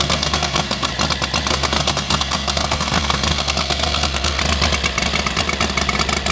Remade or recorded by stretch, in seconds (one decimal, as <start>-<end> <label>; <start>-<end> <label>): 0.0-0.9 remade; 0.9-1.5 recorded; 1.5-4.4 remade; 4.4-6.3 recorded